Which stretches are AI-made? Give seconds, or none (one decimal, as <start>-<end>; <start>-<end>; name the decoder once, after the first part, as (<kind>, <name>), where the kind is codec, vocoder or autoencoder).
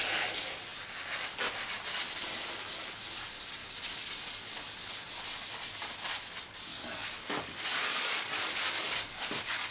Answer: 3.6-4.9 (codec, DAC); 6.7-9.7